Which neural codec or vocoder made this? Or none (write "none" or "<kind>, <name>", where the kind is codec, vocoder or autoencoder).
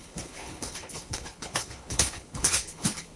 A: codec, HILCodec